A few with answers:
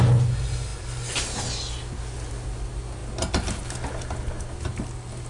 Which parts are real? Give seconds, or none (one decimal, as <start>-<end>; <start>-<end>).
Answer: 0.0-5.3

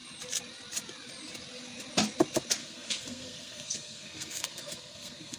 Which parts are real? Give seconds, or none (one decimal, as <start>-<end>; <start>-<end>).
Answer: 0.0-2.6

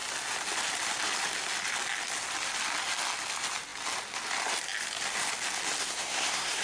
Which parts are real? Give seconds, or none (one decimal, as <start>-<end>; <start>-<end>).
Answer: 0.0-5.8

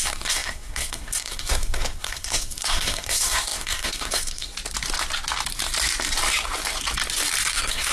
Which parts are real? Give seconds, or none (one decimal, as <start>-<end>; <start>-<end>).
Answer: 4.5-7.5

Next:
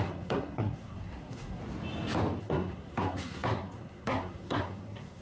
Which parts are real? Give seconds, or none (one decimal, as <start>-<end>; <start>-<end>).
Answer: 1.6-2.4